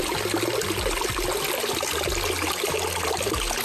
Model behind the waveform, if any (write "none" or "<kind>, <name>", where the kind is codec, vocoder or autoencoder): none